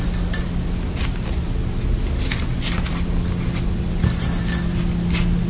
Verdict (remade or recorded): recorded